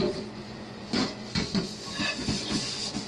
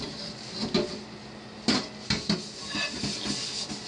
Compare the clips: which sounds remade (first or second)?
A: first